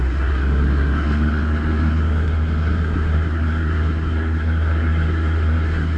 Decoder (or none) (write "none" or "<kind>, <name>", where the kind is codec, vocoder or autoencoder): codec, SNAC